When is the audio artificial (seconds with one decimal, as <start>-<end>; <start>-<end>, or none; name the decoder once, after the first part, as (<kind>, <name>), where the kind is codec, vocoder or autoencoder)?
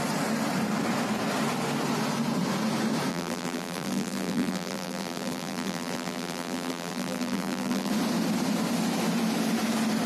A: 3.1-7.9 (vocoder, BigVGAN v2)